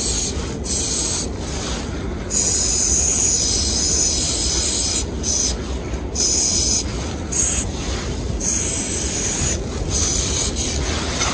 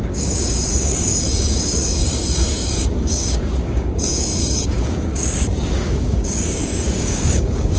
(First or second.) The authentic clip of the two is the first